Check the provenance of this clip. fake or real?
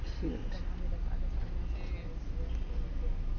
real